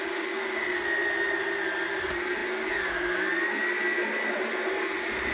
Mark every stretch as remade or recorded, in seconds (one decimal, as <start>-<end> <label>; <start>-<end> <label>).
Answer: 0.0-5.3 recorded